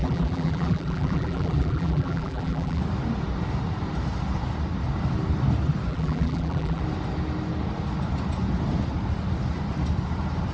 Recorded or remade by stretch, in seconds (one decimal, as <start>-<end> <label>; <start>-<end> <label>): 0.0-2.8 remade; 2.8-5.9 recorded; 5.9-6.8 remade; 6.8-10.5 recorded